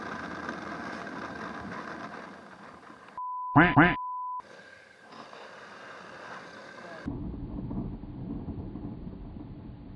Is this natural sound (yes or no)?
yes